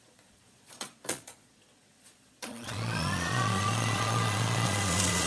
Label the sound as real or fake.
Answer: fake